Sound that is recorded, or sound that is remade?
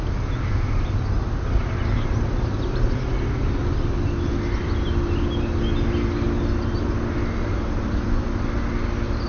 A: recorded